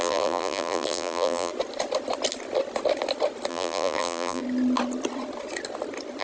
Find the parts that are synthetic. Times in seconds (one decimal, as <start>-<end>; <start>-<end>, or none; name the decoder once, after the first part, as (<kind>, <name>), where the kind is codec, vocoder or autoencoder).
0.0-1.5 (vocoder, BigVGAN v2); 3.5-4.4